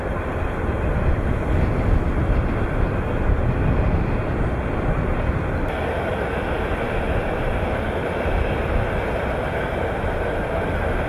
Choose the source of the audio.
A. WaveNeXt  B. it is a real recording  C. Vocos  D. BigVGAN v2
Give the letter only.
B